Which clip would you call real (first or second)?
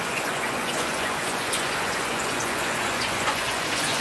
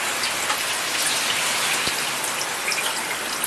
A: second